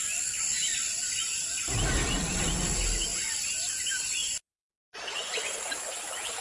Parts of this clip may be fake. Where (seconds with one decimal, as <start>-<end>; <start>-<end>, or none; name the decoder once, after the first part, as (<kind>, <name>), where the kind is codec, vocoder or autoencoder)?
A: none